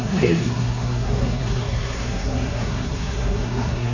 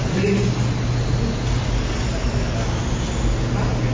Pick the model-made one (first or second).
first